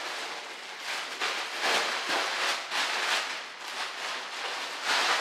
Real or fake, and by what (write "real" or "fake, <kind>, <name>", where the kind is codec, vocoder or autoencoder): real